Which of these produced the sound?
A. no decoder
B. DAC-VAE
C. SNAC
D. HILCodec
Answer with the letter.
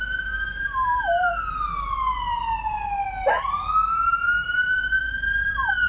A